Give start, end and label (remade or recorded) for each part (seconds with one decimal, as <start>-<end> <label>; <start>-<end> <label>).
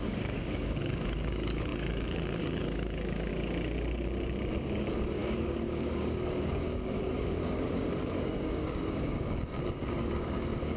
0.0-3.3 remade; 3.3-4.5 recorded; 4.5-10.8 remade